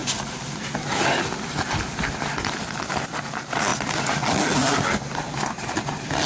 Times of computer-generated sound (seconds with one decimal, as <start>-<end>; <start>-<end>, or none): none